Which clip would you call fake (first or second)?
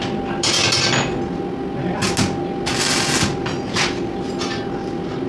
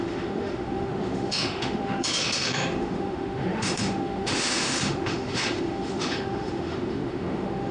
second